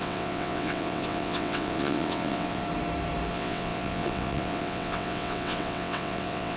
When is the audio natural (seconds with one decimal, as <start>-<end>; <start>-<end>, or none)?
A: 2.6-3.3